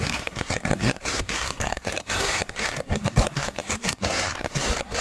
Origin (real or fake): fake